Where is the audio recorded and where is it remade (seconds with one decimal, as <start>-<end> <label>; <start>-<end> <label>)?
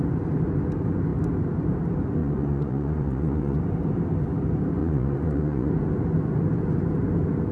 0.0-2.2 recorded; 2.2-3.6 remade; 3.6-4.8 recorded; 4.8-5.7 remade; 5.7-7.5 recorded